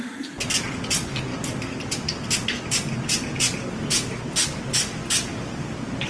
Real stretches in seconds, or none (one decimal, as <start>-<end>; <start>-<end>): 0.0-6.1